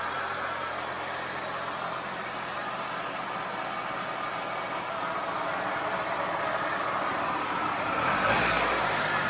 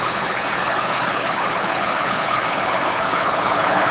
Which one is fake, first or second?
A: second